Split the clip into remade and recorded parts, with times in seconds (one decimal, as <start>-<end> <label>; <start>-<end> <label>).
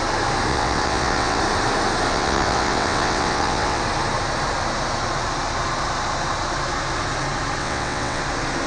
0.0-0.5 recorded; 0.5-1.4 remade; 1.4-2.1 recorded; 2.1-3.8 remade; 3.8-7.6 recorded; 7.6-8.2 remade; 8.2-8.7 recorded